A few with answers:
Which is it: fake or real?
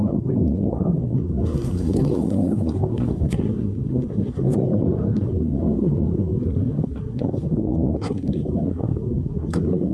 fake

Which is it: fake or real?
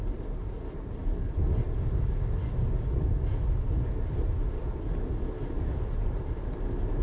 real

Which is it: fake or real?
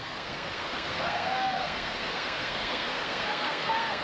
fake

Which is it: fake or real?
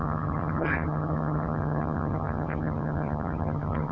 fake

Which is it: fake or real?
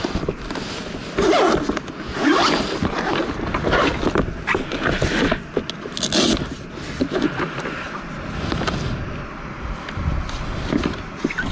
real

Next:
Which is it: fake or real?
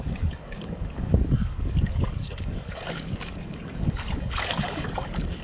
fake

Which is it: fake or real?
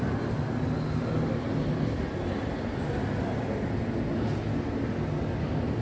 real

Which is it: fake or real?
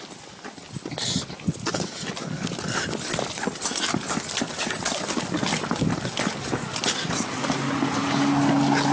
real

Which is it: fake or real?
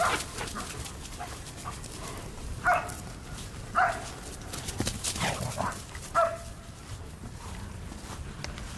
real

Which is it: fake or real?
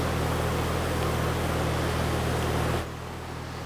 real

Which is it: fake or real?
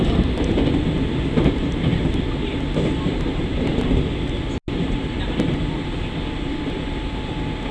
real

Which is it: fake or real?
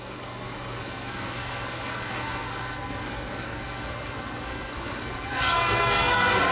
fake